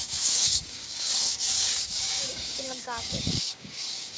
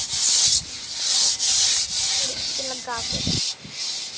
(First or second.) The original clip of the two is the second